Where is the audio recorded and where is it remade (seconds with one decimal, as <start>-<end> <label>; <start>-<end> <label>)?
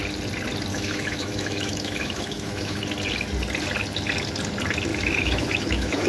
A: 0.0-0.7 recorded; 0.7-2.8 remade; 2.8-4.9 recorded; 4.9-6.1 remade